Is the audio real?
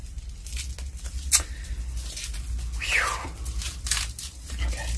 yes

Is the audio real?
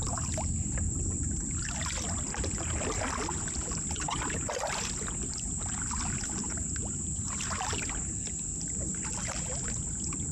yes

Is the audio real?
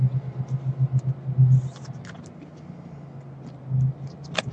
yes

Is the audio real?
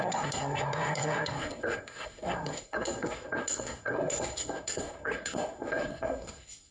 no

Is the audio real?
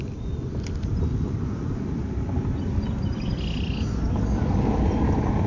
yes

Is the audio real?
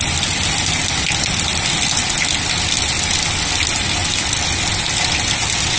yes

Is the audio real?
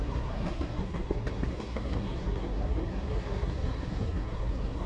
no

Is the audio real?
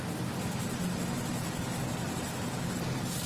yes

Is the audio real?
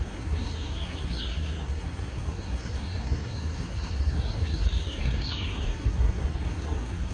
no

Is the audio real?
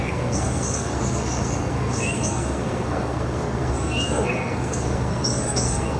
no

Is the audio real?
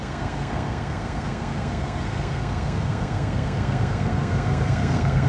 no